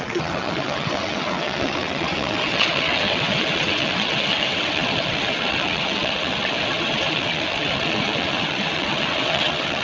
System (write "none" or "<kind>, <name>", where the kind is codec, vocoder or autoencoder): vocoder, WaveNeXt